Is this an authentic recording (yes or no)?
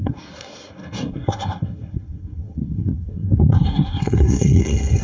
no